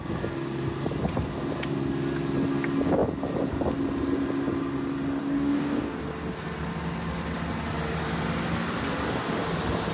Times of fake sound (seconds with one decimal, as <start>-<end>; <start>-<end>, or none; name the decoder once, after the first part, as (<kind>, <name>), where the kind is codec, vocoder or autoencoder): 5.2-5.9 (codec, DAC)